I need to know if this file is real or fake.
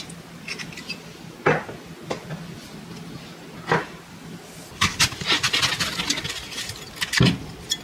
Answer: real